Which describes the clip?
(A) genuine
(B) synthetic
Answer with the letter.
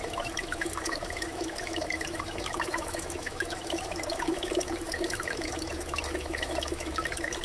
B